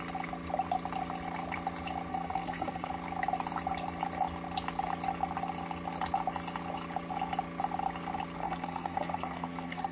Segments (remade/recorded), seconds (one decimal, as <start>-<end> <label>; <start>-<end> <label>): 0.0-2.1 recorded; 2.1-2.9 remade; 2.9-8.4 recorded; 8.4-9.9 remade